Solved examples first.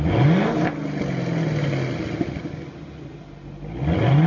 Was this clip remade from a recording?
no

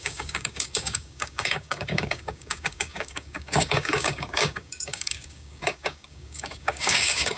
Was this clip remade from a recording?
yes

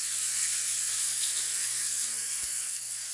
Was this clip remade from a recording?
yes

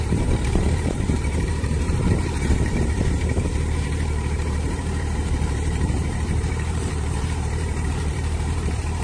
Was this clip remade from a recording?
yes